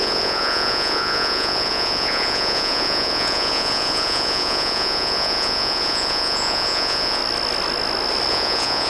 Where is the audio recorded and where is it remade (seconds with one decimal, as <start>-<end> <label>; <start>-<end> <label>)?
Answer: 0.0-7.2 remade; 7.2-8.3 recorded; 8.3-8.9 remade